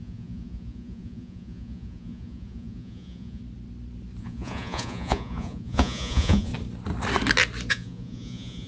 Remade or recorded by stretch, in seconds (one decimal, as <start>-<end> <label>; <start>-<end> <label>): 0.0-3.4 remade; 3.4-4.2 recorded; 4.2-6.5 remade; 6.5-7.7 recorded; 7.7-8.7 remade